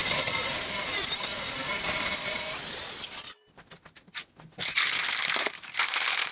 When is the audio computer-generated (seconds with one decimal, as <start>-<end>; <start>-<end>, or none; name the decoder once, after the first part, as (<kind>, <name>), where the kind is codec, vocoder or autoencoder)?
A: 0.0-3.8 (vocoder, BigVGAN v2)